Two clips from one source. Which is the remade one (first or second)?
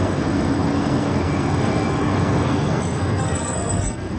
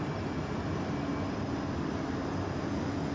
first